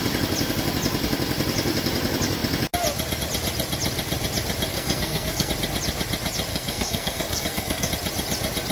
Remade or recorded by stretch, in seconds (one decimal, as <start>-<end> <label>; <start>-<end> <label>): 0.0-4.7 recorded; 4.7-5.5 remade; 5.5-6.5 recorded; 6.5-7.9 remade; 7.9-8.7 recorded